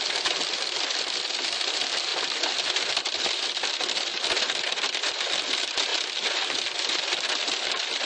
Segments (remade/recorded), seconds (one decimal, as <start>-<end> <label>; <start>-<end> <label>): 0.0-8.1 remade